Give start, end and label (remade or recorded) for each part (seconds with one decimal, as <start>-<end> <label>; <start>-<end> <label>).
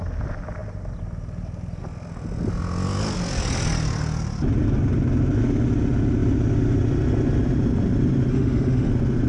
0.0-8.3 recorded; 8.3-8.9 remade; 8.9-9.3 recorded